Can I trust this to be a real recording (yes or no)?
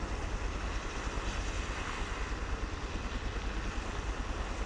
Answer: yes